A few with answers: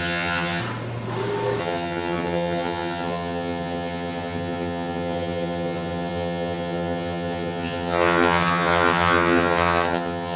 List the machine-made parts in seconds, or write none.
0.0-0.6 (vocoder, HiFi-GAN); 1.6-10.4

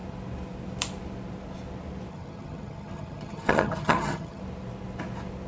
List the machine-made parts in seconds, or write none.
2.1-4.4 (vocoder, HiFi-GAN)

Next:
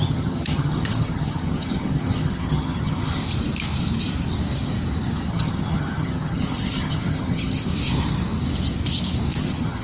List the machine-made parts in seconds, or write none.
0.0-3.2 (vocoder, HiFi-GAN); 5.3-7.7; 9.4-9.8

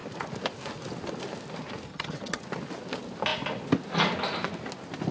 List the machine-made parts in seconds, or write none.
1.9-2.4 (vocoder, HiFi-GAN)

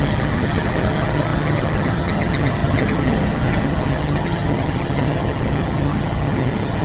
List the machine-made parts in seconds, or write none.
0.0-6.8 (vocoder, HiFi-GAN)